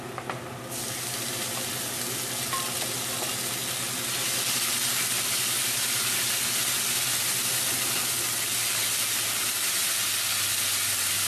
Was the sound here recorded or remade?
recorded